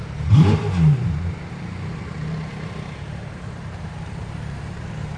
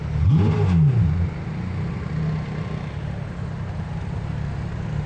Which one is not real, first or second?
first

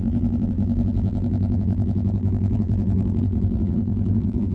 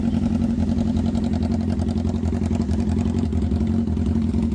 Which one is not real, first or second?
first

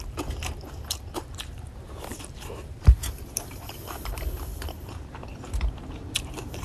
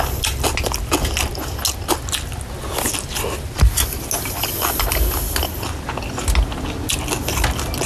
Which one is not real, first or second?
first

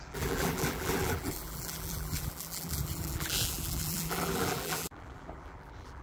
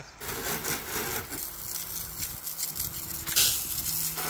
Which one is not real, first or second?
first